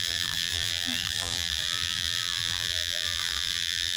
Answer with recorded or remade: remade